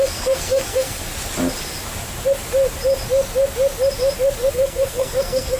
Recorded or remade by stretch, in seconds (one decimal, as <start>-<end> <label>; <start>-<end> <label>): 0.0-1.1 remade; 1.1-4.5 recorded; 4.5-5.6 remade